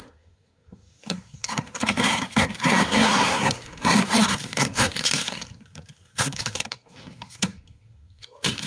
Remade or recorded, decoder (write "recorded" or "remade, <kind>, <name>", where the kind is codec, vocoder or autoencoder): remade, codec, SNAC